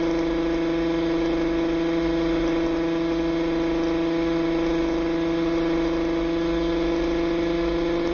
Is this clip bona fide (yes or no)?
yes